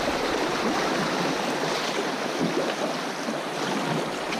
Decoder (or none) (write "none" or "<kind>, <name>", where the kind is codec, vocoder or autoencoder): none